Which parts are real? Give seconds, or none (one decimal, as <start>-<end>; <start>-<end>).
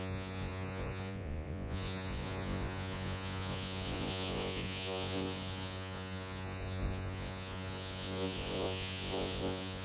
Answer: none